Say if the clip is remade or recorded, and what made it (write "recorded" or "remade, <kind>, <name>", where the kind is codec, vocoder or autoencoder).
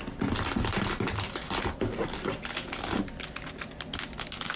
recorded